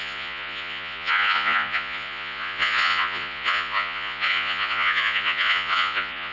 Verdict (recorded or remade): remade